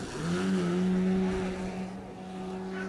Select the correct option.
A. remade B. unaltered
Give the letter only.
B